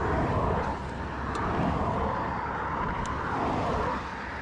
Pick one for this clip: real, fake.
real